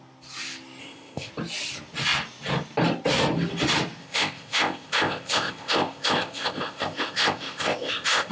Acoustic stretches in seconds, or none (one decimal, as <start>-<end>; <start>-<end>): 0.0-0.8; 1.3-4.0